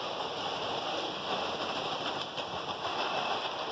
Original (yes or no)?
yes